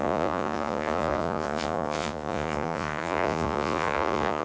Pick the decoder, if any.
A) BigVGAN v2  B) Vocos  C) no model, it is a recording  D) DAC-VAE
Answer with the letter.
B